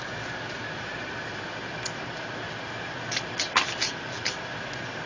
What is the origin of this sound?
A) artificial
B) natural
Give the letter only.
B